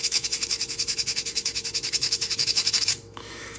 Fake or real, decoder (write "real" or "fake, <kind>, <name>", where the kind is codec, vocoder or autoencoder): fake, autoencoder, DAC-VAE